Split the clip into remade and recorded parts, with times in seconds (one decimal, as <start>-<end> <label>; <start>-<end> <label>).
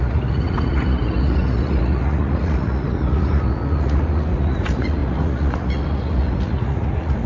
0.0-7.3 remade